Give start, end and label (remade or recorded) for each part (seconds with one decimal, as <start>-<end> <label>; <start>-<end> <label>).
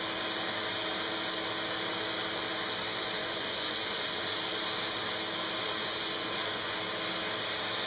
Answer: 0.0-3.2 recorded; 3.2-4.4 remade; 4.4-5.6 recorded; 5.6-6.8 remade; 6.8-7.9 recorded